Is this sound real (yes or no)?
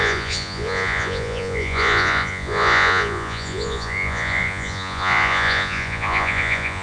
no